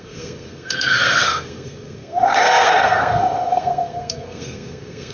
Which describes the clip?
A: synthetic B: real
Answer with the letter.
A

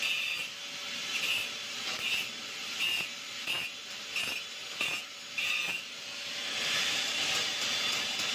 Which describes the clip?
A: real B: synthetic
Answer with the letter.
A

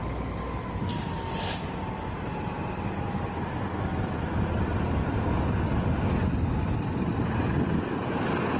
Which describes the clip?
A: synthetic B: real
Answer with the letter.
B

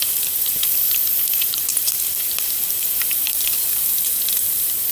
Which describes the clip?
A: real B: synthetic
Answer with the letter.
A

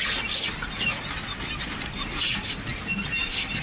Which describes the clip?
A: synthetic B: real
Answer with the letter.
B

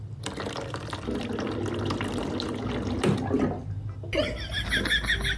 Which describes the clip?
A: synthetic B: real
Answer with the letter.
B